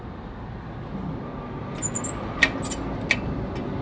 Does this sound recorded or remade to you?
recorded